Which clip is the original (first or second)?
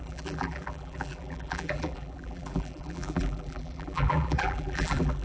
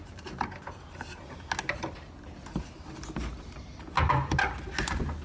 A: second